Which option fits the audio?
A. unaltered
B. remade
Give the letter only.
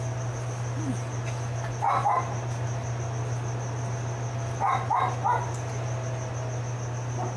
A